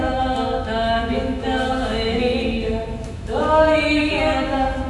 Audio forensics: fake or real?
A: fake